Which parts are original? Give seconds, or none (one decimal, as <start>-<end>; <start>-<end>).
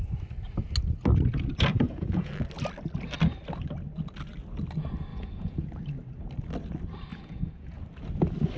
0.0-1.7; 2.3-5.1; 5.7-7.1; 7.8-8.6